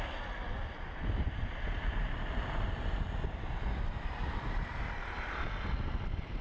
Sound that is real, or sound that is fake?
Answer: fake